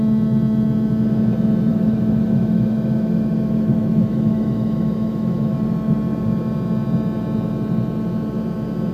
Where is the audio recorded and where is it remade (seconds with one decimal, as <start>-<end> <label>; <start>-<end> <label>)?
0.0-1.7 recorded; 1.7-5.5 remade; 5.5-8.9 recorded